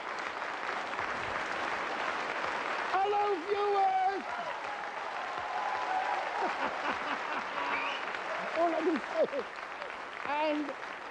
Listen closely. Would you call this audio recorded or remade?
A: recorded